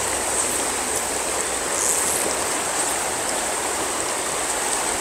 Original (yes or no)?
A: yes